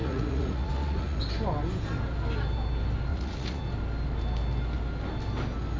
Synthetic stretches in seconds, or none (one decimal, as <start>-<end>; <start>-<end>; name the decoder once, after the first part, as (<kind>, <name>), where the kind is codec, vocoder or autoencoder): 0.0-1.2 (vocoder, Vocos); 3.1-3.6